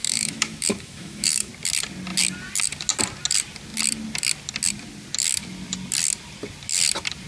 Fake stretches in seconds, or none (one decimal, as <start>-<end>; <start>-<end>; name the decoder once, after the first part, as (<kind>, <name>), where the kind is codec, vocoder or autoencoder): 0.0-1.5 (autoencoder, DAC-VAE)